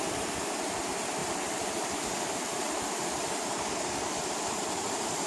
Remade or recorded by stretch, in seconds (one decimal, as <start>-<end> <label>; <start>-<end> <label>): 0.0-5.3 recorded

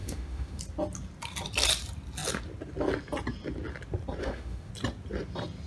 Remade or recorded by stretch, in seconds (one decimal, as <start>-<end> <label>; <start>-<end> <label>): 0.0-0.6 remade; 0.6-4.2 recorded; 4.2-4.7 remade; 4.7-5.7 recorded

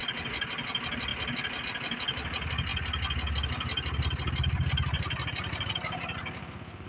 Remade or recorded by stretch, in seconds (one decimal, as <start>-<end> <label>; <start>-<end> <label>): 0.0-6.9 recorded

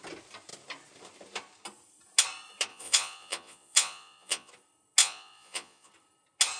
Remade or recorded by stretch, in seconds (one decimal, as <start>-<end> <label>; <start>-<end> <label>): 0.0-2.7 recorded; 2.7-4.5 remade; 4.5-5.0 recorded; 5.0-5.9 remade; 5.9-6.6 recorded

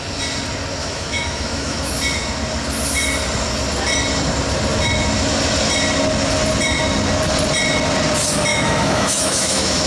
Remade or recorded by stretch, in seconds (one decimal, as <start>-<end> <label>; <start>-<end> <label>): 0.0-0.8 recorded; 0.8-1.9 remade; 1.9-8.5 recorded; 8.5-9.9 remade

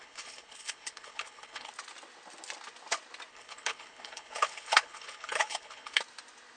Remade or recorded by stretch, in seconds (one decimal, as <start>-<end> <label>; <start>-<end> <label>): 0.0-1.7 remade; 1.7-3.3 recorded; 3.3-6.0 remade; 6.0-6.6 recorded

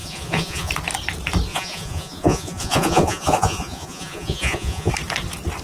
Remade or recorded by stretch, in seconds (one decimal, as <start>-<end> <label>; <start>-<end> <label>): 0.0-0.7 remade; 0.7-1.5 recorded; 1.5-4.9 remade; 4.9-5.6 recorded

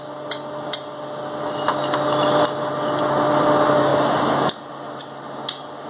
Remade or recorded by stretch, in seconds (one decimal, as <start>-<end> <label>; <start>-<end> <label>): 0.0-5.9 recorded